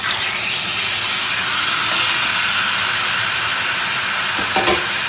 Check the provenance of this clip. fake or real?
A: real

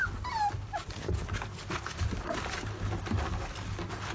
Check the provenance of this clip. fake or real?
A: real